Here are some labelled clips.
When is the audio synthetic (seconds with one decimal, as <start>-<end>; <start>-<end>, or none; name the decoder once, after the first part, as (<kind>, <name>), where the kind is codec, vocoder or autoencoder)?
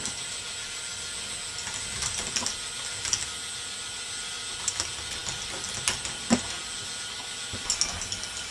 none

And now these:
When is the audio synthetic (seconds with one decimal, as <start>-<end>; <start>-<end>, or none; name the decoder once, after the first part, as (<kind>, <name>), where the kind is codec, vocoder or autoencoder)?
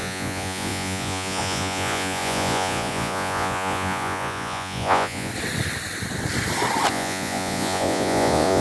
0.0-5.3 (vocoder, Vocos); 6.9-8.6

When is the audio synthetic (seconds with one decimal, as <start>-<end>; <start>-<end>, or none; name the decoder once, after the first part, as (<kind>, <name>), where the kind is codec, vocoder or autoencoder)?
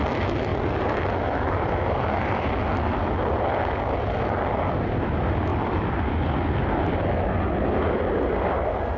none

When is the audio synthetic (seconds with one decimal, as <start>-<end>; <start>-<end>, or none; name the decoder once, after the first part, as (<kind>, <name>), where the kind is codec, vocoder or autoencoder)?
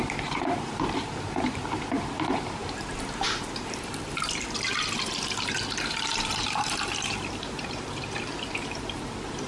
0.0-9.5 (vocoder, BigVGAN v2)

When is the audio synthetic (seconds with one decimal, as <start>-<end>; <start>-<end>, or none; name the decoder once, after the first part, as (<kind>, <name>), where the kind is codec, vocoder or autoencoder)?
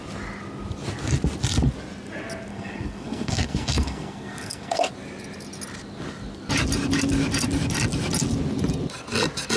2.5-4.9 (codec, SNAC)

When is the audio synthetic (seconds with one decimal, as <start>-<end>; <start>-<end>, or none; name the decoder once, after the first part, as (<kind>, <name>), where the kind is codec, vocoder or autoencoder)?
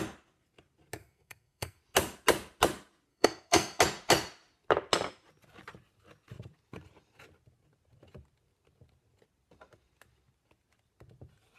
1.0-1.8 (codec, SNAC); 3.1-3.8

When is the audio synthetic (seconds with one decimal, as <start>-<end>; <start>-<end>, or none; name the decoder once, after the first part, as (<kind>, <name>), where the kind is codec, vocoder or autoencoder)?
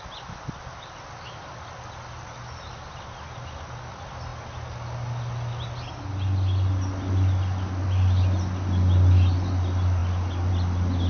none